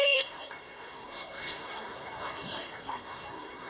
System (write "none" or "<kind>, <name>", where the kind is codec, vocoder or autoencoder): codec, SNAC